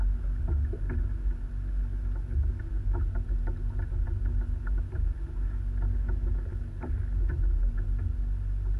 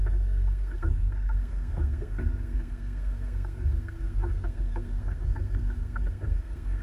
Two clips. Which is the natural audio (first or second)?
first